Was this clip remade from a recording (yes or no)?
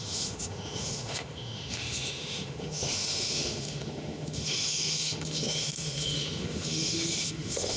yes